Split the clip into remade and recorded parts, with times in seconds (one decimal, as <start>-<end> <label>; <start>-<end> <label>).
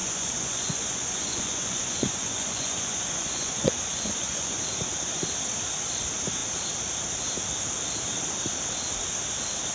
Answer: 0.0-4.6 remade; 4.6-9.7 recorded